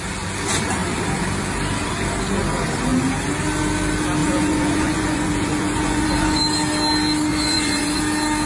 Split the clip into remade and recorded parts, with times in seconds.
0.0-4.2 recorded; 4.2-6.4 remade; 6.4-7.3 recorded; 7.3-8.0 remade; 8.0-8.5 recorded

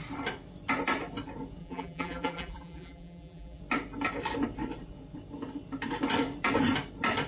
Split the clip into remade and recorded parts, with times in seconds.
0.0-1.6 recorded; 1.6-3.6 remade; 3.6-7.3 recorded